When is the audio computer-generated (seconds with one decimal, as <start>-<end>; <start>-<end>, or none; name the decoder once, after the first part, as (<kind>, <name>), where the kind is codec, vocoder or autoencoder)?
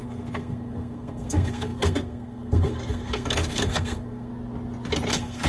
0.0-4.3 (codec, SNAC); 5.1-5.5